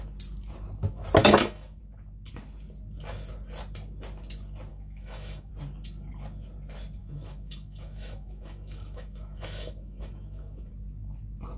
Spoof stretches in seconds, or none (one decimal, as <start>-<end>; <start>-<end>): 1.2-1.8; 4.7-5.5; 7.0-10.7